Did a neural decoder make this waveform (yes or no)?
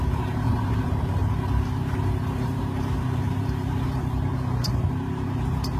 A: yes